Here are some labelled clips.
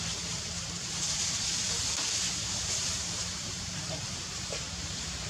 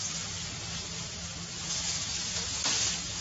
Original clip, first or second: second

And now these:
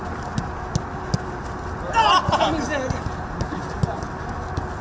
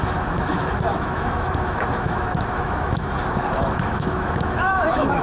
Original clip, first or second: first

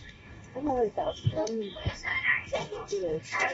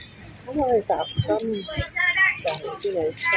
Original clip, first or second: second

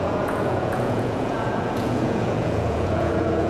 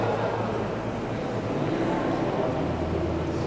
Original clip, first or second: second